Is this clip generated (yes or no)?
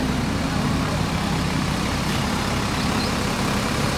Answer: yes